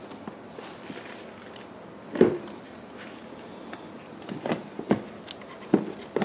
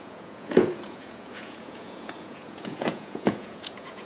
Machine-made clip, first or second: second